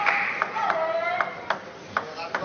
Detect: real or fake real